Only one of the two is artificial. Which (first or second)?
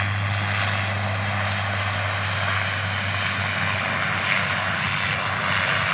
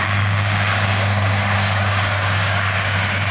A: second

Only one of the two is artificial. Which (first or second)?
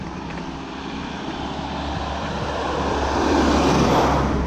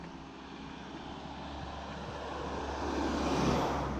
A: first